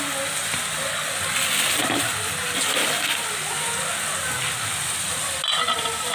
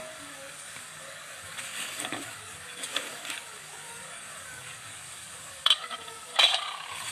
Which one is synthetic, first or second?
second